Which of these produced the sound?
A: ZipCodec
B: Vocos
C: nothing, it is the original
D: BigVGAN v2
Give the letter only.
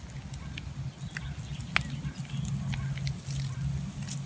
C